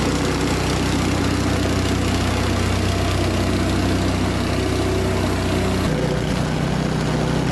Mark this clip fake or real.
real